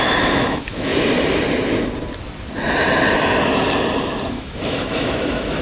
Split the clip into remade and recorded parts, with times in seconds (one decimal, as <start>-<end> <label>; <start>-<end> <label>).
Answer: 0.0-0.9 remade; 0.9-4.3 recorded; 4.3-5.6 remade